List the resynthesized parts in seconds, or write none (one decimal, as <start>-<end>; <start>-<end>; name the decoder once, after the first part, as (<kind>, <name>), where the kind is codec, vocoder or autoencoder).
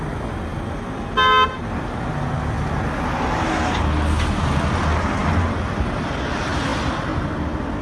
none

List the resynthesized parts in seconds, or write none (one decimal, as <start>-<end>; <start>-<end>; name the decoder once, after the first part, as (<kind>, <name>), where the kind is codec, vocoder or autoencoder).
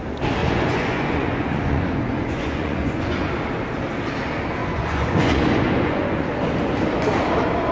0.4-3.3 (vocoder, Vocos); 4.6-6.3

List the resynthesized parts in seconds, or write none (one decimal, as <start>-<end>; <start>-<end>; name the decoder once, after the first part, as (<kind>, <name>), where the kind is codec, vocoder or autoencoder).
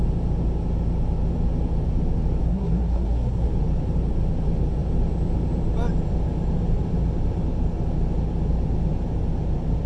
2.4-3.5 (codec, SNAC)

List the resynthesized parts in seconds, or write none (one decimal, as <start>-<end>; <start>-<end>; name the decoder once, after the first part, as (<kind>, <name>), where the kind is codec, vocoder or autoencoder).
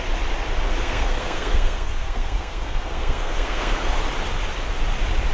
0.8-4.0 (codec, SNAC)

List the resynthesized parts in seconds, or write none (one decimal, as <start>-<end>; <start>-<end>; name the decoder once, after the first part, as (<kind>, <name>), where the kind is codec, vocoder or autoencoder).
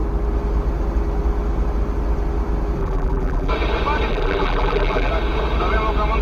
2.8-3.5 (vocoder, BigVGAN v2); 4.1-5.1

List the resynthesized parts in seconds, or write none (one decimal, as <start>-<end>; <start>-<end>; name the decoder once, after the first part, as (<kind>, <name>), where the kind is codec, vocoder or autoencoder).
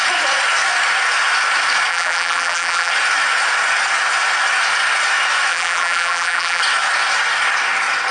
1.9-2.9 (vocoder, BigVGAN v2); 5.5-6.6